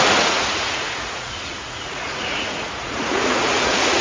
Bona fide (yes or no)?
no